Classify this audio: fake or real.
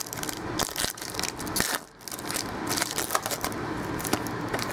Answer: real